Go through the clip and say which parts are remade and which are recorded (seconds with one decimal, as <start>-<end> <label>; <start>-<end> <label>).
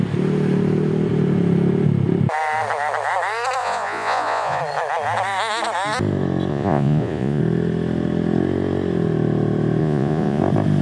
0.0-3.6 recorded; 3.6-4.6 remade; 4.6-6.5 recorded; 6.5-7.4 remade; 7.4-9.8 recorded; 9.8-10.4 remade; 10.4-10.8 recorded